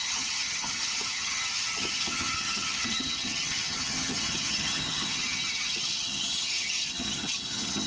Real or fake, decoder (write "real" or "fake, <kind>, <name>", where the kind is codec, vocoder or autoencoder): fake, vocoder, HiFi-GAN